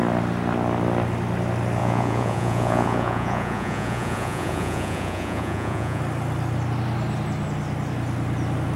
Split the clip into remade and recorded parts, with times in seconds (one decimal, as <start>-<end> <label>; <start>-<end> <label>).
0.0-1.8 recorded; 1.8-6.0 remade; 6.0-8.8 recorded